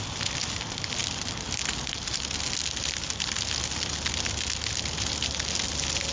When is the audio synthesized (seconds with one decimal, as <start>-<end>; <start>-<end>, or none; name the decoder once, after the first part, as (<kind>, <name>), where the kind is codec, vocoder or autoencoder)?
none